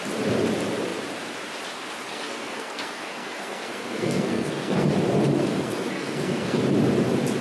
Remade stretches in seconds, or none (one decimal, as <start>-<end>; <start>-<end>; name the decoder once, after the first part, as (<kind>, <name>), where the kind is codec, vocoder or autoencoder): 2.1-4.9 (codec, SNAC); 5.4-6.6